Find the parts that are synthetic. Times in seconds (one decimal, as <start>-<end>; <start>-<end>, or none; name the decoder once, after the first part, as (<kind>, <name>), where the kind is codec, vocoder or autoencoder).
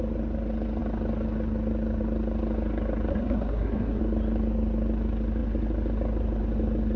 3.1-4.0 (codec, SNAC)